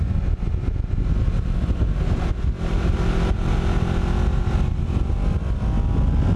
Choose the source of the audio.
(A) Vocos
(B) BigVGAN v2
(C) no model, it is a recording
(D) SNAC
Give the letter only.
C